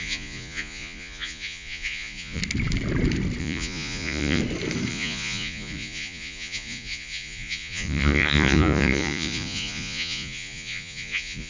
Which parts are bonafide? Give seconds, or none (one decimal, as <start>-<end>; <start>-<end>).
2.4-3.4; 4.4-4.9